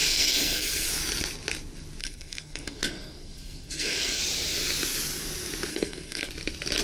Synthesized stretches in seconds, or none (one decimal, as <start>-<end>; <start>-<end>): 0.0-0.9; 2.0-4.2; 5.7-6.3